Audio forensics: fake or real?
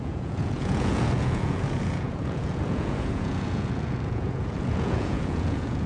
fake